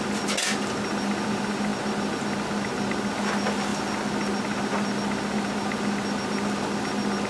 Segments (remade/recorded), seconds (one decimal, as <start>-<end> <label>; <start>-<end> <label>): 0.0-7.3 recorded